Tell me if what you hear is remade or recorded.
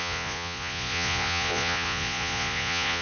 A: remade